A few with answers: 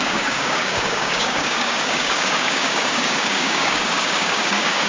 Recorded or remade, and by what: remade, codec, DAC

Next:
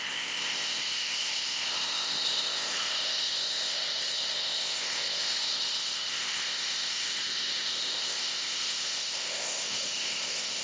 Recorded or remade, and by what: remade, codec, ZipCodec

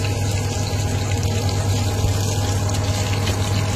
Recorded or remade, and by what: recorded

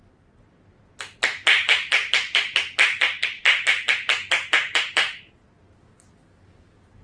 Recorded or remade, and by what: recorded